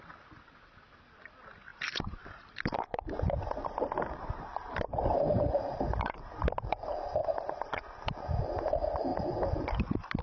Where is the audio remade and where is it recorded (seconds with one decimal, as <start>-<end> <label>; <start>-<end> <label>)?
0.0-1.7 recorded; 1.7-6.3 remade; 6.3-7.2 recorded; 7.2-7.8 remade; 7.8-10.2 recorded